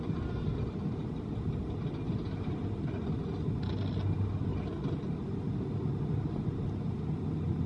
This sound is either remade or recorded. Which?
recorded